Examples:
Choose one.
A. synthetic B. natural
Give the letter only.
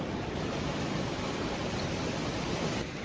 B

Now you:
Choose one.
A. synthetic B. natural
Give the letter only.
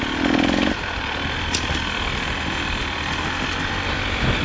B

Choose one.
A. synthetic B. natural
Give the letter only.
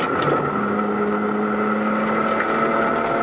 B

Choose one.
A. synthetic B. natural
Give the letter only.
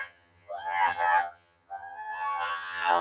A